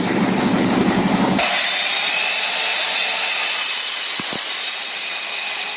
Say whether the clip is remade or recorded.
remade